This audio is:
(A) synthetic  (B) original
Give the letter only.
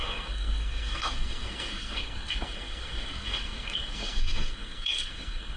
A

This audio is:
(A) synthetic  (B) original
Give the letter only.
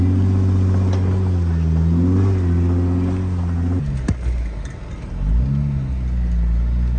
B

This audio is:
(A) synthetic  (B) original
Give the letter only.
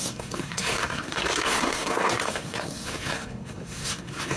A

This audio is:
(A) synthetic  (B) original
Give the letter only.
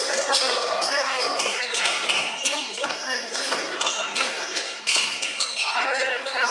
A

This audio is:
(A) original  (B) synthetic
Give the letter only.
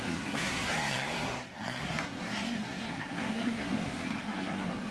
B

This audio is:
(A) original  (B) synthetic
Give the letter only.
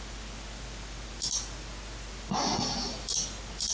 A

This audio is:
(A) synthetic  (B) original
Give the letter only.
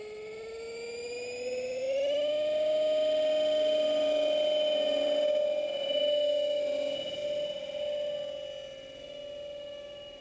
B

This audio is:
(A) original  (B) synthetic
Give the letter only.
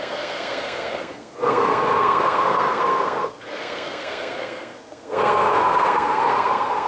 B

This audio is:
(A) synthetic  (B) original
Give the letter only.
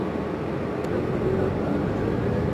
B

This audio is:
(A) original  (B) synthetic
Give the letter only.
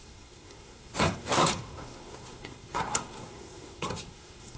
B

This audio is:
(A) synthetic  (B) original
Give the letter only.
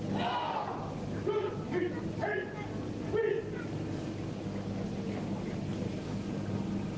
B